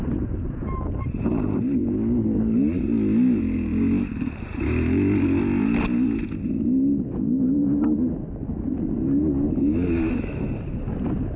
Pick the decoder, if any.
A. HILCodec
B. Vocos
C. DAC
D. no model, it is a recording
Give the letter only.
D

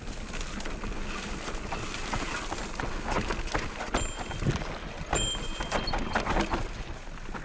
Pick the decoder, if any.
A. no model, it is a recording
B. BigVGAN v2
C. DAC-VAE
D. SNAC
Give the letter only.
A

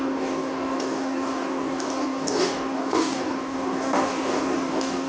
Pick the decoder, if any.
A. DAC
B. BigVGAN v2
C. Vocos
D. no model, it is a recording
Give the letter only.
A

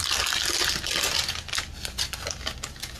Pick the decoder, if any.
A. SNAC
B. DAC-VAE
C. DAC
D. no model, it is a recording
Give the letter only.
D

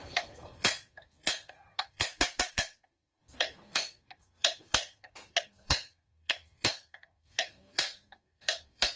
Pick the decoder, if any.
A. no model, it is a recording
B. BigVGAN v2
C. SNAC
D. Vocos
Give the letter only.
C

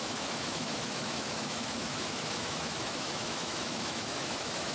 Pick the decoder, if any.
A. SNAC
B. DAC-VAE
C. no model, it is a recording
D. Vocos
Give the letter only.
B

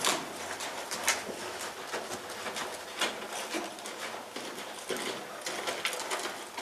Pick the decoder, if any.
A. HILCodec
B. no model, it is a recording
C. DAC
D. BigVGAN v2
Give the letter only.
B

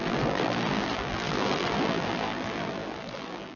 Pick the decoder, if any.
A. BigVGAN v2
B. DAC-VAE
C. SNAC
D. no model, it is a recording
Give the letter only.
A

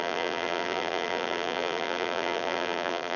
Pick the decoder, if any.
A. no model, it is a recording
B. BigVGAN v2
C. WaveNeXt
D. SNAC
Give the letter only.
B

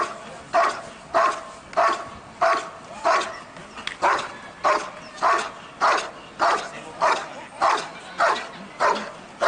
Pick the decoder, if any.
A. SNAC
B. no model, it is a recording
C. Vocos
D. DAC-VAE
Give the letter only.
B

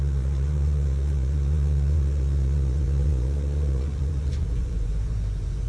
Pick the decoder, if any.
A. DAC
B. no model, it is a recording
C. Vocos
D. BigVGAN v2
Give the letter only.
C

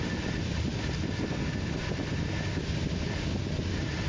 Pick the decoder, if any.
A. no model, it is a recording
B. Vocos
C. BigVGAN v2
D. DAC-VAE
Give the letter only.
A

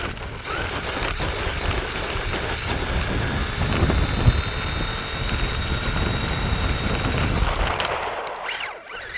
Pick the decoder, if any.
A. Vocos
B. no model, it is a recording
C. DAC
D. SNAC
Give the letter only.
B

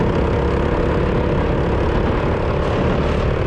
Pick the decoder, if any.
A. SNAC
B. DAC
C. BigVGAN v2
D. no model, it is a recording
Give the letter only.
D